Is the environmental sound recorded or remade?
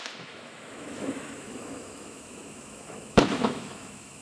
remade